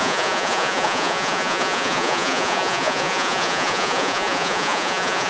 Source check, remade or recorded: remade